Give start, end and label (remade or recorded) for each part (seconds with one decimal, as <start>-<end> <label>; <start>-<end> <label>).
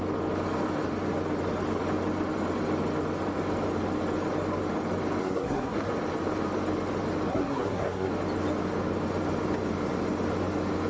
0.0-5.2 recorded; 5.2-5.9 remade; 5.9-7.3 recorded; 7.3-8.1 remade; 8.1-10.9 recorded